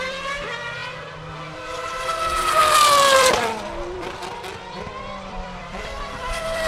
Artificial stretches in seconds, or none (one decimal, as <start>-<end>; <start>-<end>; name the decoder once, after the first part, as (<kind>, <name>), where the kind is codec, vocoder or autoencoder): 0.0-0.8 (vocoder, BigVGAN v2); 2.1-6.7